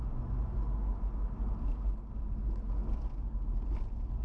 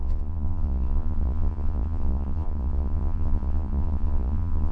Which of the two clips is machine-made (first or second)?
second